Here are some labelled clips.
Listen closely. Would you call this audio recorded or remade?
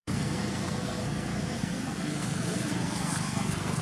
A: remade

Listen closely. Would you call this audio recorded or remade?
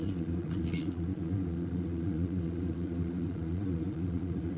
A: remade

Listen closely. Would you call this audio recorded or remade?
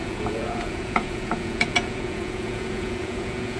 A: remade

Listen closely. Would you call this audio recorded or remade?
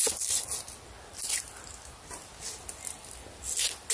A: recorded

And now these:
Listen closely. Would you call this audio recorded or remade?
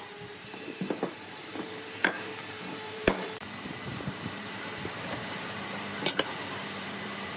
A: remade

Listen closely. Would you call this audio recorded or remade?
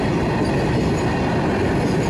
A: recorded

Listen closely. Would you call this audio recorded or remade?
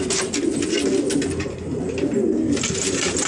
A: recorded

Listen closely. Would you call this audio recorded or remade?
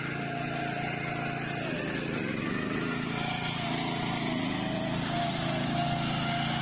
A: recorded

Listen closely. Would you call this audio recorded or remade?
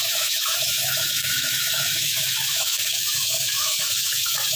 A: remade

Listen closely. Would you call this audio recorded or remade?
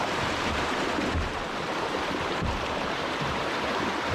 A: remade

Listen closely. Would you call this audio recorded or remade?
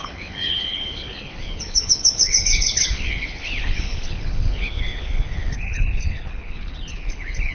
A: remade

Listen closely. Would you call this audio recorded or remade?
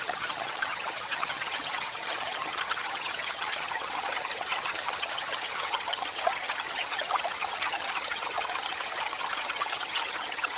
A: remade